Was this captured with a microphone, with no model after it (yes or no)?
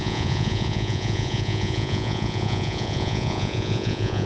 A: no